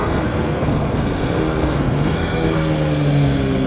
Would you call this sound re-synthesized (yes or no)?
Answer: yes